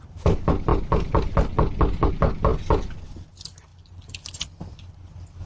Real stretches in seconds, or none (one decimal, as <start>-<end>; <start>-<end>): 0.0-3.7; 4.9-5.5